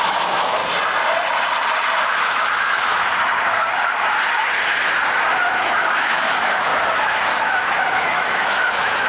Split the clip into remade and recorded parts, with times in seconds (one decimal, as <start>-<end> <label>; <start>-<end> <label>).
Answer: 0.0-0.6 remade; 0.6-2.0 recorded; 2.0-3.1 remade; 3.1-5.5 recorded; 5.5-6.7 remade; 6.7-7.4 recorded; 7.4-9.1 remade